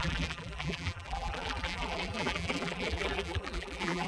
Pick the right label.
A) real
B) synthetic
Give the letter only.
B